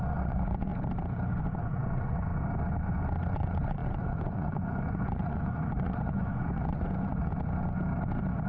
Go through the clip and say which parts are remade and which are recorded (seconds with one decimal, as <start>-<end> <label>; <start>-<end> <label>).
0.0-0.7 remade; 0.7-1.4 recorded; 1.4-2.3 remade; 2.3-3.3 recorded; 3.3-7.3 remade; 7.3-8.5 recorded